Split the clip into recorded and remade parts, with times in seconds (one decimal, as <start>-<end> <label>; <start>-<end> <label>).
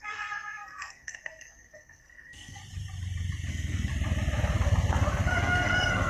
0.0-2.6 remade; 2.6-3.5 recorded; 3.5-3.9 remade; 3.9-5.4 recorded; 5.4-6.1 remade